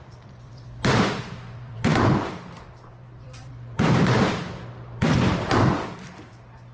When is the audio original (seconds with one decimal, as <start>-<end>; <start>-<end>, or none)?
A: none